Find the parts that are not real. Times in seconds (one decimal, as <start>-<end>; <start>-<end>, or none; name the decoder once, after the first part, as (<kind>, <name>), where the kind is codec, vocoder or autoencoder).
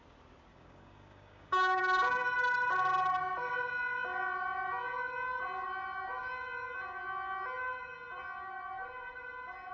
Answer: 0.5-1.8 (codec, DAC)